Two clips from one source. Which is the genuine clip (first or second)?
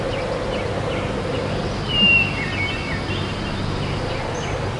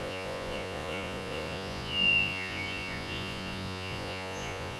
first